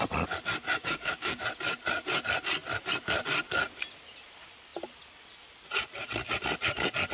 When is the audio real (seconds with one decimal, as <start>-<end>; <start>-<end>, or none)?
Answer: 0.0-0.7; 1.4-7.1